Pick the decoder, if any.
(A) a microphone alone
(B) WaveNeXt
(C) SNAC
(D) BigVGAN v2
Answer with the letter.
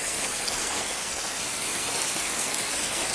C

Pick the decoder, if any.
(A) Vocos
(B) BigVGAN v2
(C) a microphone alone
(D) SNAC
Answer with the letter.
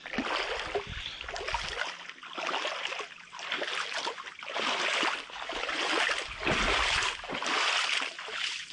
C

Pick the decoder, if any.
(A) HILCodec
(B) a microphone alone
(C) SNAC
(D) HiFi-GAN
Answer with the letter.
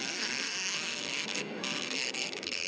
C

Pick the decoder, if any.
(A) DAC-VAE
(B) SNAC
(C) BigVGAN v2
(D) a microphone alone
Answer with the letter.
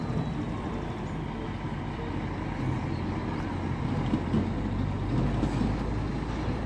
D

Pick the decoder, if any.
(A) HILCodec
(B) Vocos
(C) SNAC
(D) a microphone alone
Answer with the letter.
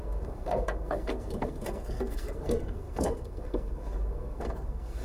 C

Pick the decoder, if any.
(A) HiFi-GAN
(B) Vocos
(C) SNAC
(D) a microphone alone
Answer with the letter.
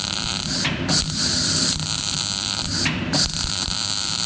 D